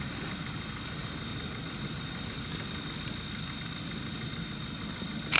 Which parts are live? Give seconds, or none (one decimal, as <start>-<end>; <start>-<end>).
1.3-3.6